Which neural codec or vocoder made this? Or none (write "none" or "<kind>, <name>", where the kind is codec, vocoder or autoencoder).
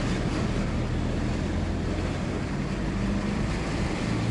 none